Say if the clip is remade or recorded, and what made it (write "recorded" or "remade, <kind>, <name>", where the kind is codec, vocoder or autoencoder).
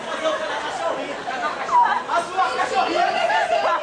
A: remade, vocoder, BigVGAN v2